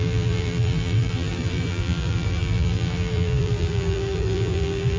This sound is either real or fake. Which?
fake